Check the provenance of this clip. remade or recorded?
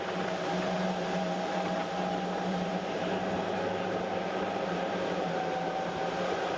remade